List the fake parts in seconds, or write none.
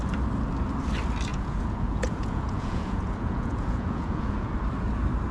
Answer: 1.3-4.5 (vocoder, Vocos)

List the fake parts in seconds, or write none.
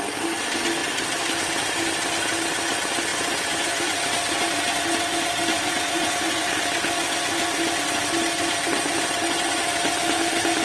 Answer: 3.1-4.1 (vocoder, Vocos); 5.5-6.5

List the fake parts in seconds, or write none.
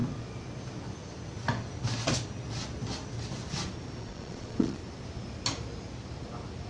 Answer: 4.0-4.8 (vocoder, Vocos)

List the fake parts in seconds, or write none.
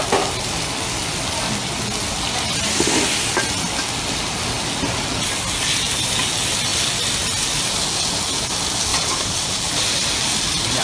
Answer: 8.9-9.6 (vocoder, Vocos)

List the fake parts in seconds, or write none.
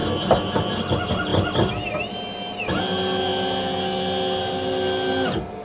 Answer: none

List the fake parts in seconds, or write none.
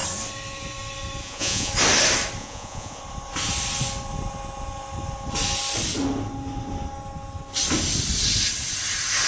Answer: 1.2-1.7 (vocoder, Vocos); 2.4-3.0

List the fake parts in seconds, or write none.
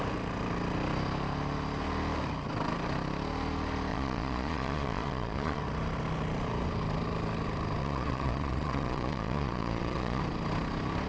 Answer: 3.9-5.6 (vocoder, Vocos); 7.8-10.2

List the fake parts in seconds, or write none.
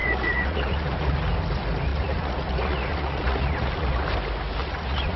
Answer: 0.0-1.2 (vocoder, Vocos); 1.9-4.0; 4.6-5.2